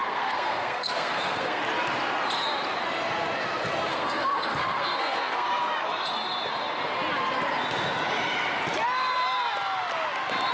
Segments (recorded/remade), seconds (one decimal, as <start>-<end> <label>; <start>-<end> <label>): 0.0-1.6 remade; 1.6-3.9 recorded; 3.9-5.5 remade; 5.5-10.5 recorded